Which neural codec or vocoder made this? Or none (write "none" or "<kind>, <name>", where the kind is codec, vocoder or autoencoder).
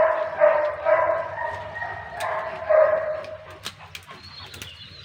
none